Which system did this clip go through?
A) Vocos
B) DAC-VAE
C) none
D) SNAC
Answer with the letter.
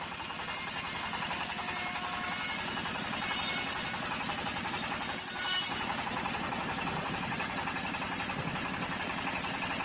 C